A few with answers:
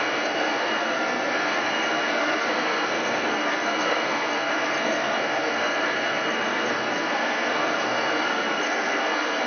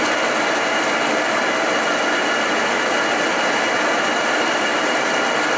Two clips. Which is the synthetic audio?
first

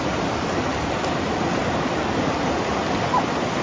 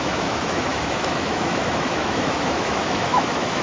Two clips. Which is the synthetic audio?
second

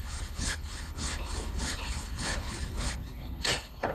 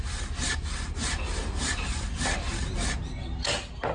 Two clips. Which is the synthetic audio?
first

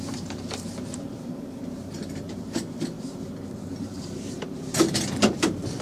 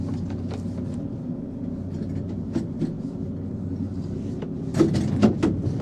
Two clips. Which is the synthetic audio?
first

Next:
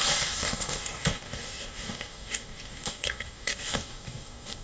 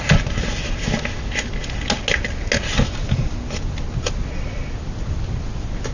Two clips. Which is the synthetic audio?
first